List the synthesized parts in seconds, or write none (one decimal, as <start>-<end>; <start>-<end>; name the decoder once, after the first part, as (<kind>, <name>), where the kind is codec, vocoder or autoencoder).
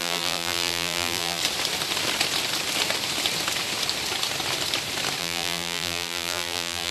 0.0-1.4 (vocoder, BigVGAN v2); 5.2-6.9